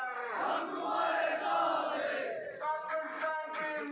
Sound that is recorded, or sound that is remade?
recorded